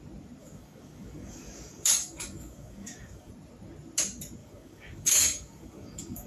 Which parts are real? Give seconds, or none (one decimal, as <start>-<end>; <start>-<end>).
0.0-0.4; 3.3-4.4